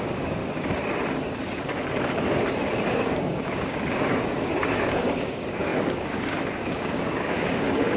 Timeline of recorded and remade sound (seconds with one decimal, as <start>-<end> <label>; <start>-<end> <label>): 0.0-0.4 remade; 0.4-2.8 recorded; 2.8-8.0 remade